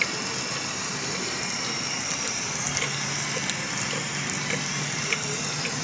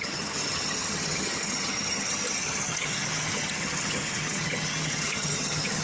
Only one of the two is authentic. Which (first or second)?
first